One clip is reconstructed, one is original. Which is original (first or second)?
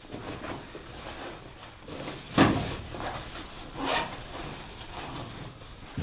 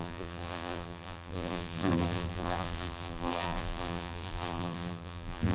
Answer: first